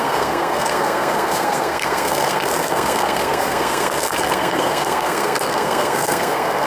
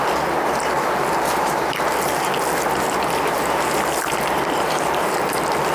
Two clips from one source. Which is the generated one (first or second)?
first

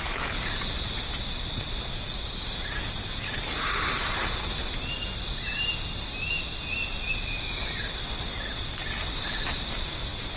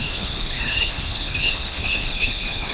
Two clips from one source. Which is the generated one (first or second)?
second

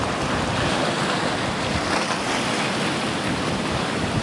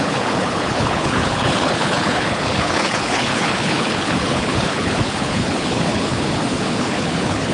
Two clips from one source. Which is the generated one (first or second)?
second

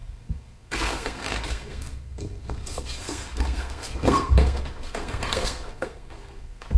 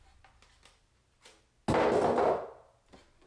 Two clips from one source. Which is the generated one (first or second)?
first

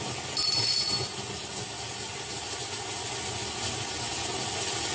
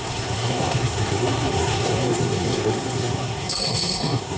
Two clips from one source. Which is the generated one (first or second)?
second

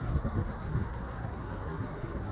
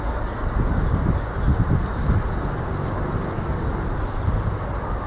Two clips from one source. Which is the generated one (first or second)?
first